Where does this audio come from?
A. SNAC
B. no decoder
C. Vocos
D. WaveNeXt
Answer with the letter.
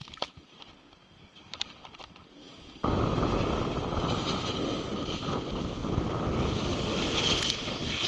B